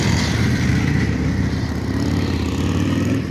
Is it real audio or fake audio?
fake